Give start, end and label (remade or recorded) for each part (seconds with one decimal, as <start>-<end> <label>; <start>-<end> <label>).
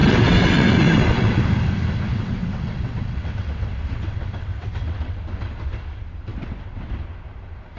0.0-1.4 remade; 1.4-2.1 recorded; 2.1-5.2 remade; 5.2-6.3 recorded; 6.3-7.0 remade; 7.0-7.8 recorded